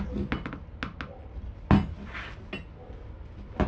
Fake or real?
real